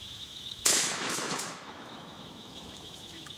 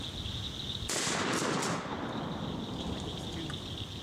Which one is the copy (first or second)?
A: first